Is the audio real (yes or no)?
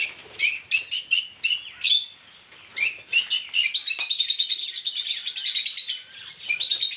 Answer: yes